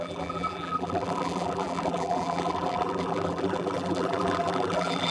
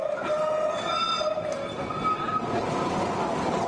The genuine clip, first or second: second